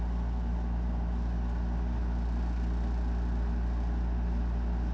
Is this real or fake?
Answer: real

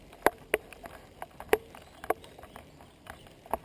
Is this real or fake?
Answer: real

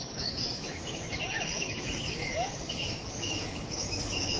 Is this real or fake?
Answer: fake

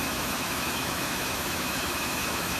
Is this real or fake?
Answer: fake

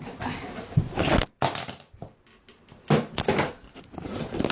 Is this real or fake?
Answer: real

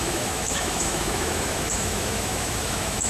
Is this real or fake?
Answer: fake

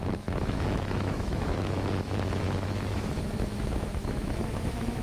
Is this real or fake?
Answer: fake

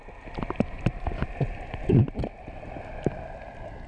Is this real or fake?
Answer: real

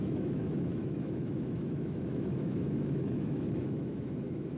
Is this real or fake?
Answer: fake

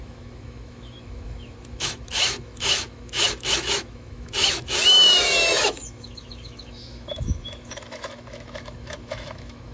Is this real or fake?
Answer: fake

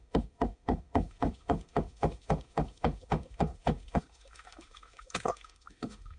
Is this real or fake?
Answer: fake